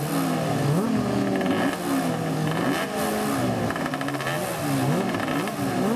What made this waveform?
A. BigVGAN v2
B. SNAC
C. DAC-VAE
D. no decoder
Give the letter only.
D